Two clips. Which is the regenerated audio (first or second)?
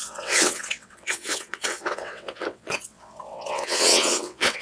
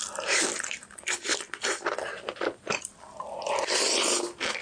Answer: first